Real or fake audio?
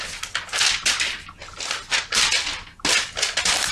real